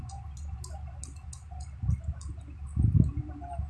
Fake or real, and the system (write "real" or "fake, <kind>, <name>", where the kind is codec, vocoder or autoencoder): real